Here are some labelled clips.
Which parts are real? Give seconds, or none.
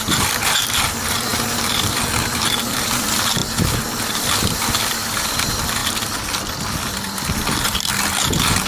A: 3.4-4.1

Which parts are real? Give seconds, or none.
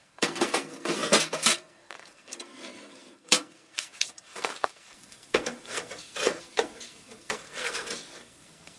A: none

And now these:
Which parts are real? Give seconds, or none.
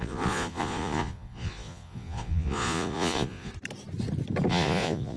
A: 3.5-4.5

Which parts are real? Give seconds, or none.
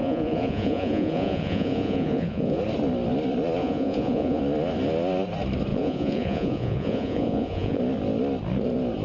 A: 2.6-3.6; 4.4-5.7; 7.8-9.0